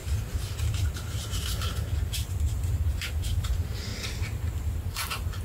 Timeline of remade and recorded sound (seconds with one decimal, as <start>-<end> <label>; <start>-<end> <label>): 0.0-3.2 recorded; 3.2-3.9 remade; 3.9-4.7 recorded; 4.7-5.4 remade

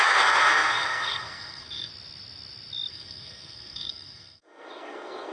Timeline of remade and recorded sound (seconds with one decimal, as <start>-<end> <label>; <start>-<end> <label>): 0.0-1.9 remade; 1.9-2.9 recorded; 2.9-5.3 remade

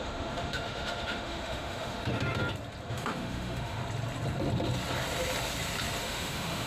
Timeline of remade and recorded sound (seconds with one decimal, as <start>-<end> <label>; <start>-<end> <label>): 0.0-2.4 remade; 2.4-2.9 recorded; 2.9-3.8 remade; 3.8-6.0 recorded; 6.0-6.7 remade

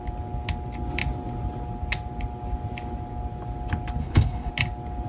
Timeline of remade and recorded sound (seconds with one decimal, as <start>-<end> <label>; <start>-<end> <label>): 0.0-4.0 recorded; 4.0-4.5 remade; 4.5-5.1 recorded

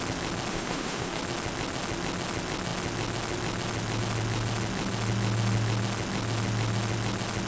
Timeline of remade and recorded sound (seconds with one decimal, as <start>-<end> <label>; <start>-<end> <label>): 0.0-0.5 recorded; 0.5-1.2 remade; 1.2-7.5 recorded